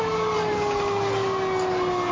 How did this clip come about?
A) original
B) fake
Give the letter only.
A